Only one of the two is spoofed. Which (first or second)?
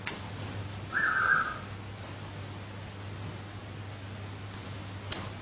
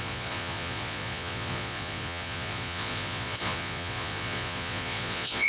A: second